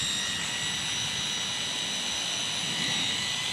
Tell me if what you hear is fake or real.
real